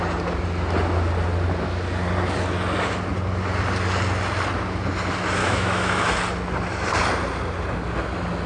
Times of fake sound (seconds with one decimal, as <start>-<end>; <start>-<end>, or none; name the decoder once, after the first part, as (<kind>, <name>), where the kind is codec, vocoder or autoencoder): 5.4-6.1 (autoencoder, DAC-VAE)